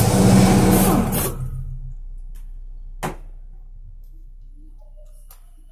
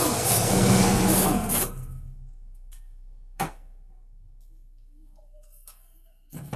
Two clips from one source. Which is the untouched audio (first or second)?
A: first